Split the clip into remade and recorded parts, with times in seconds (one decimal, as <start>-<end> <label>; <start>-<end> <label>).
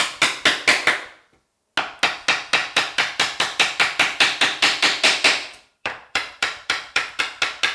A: 0.0-2.6 recorded; 2.6-7.2 remade; 7.2-7.7 recorded